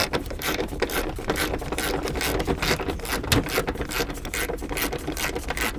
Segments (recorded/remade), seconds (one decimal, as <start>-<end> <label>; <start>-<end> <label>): 0.0-1.5 remade; 1.5-5.8 recorded